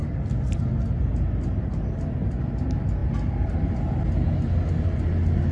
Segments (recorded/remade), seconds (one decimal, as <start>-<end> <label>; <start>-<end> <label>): 0.0-0.6 remade; 0.6-5.5 recorded